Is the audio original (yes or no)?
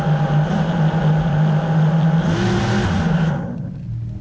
yes